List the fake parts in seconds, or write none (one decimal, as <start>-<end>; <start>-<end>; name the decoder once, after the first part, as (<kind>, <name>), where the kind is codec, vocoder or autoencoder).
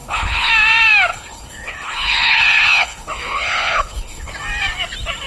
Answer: 0.0-0.5 (codec, HILCodec); 1.1-4.3